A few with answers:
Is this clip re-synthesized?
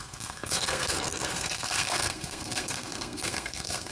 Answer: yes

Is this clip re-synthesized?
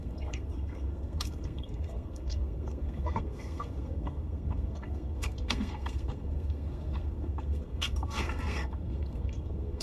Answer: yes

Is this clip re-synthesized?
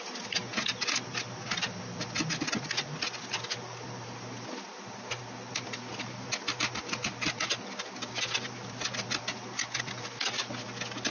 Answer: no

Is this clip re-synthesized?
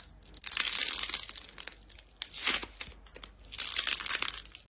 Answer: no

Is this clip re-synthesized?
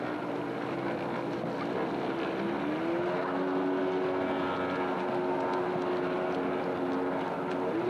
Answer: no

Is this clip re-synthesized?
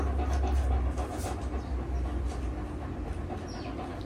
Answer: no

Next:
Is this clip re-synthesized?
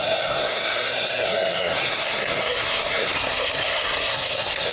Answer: yes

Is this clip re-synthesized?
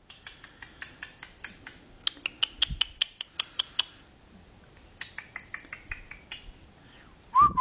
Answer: no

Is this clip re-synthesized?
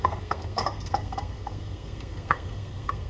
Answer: yes